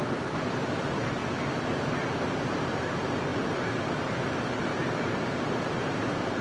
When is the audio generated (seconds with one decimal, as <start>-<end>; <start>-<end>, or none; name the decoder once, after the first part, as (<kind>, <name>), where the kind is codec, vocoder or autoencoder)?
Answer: 0.0-1.2 (vocoder, BigVGAN v2); 2.1-6.4